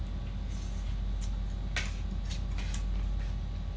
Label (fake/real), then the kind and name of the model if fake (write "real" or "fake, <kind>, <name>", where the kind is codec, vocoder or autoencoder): real